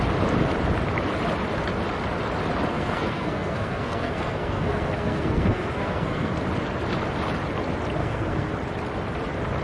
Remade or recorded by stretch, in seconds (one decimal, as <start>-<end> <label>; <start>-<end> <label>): 0.0-2.7 recorded; 2.7-6.3 remade; 6.3-8.0 recorded; 8.0-8.5 remade; 8.5-9.6 recorded